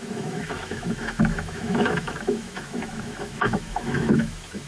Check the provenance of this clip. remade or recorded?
remade